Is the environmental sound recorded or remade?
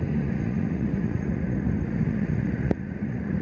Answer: remade